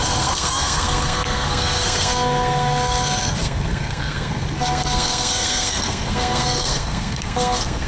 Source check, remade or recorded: remade